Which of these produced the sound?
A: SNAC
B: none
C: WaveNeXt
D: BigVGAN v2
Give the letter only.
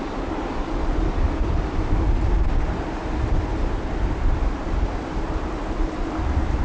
D